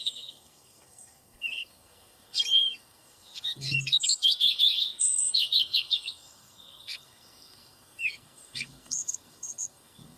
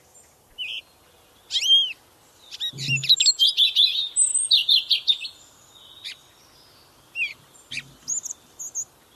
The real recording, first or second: second